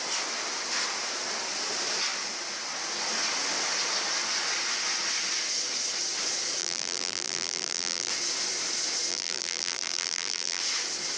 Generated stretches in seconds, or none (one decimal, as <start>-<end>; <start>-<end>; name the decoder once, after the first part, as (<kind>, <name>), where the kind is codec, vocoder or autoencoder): 6.6-8.1 (vocoder, BigVGAN v2); 9.1-10.6